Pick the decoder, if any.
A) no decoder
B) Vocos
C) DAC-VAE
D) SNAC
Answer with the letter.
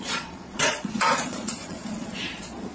B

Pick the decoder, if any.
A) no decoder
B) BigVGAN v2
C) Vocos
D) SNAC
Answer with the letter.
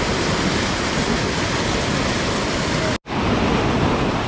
A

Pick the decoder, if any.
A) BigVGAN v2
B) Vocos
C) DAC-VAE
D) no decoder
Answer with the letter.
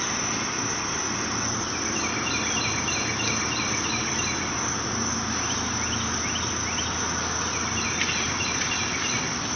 D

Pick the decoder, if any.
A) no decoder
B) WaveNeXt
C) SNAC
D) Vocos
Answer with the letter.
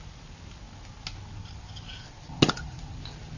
A